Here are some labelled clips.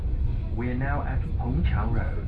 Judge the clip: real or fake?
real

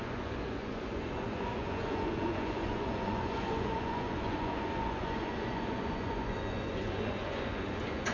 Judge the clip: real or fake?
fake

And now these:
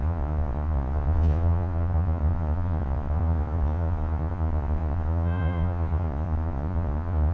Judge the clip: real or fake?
fake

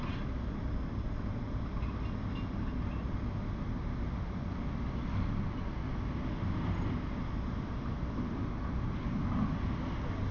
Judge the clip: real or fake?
real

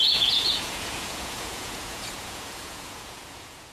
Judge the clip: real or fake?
fake